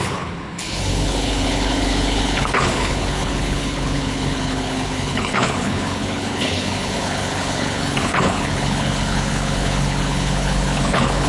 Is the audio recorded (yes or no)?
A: no